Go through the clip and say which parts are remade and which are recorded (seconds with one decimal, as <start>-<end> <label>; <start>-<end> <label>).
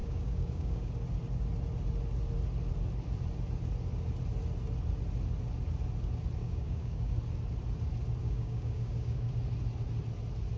0.0-0.9 remade; 0.9-6.4 recorded; 6.4-7.2 remade; 7.2-8.2 recorded; 8.2-9.3 remade; 9.3-10.6 recorded